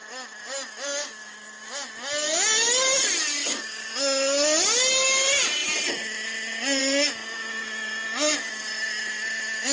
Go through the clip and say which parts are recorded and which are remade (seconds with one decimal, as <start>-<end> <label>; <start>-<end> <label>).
0.0-1.0 recorded; 1.0-1.6 remade; 1.6-3.4 recorded; 3.4-3.9 remade; 3.9-9.7 recorded